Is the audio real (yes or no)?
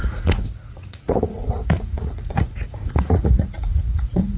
no